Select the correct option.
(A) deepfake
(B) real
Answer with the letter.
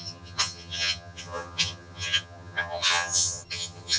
A